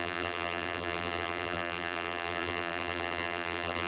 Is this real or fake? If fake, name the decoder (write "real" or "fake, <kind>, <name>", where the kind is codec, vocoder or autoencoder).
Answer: fake, vocoder, BigVGAN v2